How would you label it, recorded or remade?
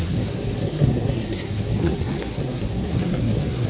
remade